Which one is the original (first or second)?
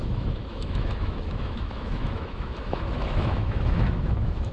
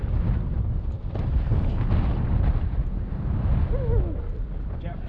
second